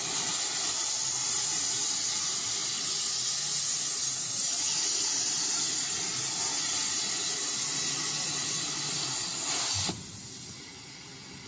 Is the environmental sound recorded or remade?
recorded